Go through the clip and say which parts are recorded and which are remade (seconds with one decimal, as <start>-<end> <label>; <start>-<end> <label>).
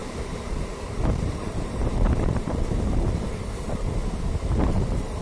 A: 0.0-4.0 remade; 4.0-4.6 recorded; 4.6-5.2 remade